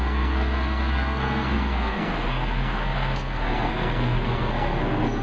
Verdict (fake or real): fake